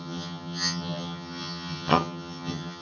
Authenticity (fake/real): fake